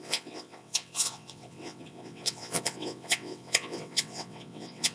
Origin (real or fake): fake